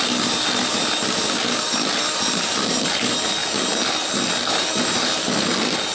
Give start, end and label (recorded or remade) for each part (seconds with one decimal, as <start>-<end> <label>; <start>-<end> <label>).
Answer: 0.0-5.9 recorded